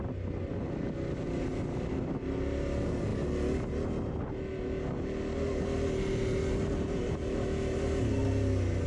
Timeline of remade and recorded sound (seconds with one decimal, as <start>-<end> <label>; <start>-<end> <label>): 0.0-8.9 recorded